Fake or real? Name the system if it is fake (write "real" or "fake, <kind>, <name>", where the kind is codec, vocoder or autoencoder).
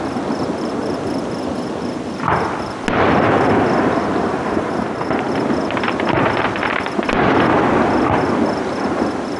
real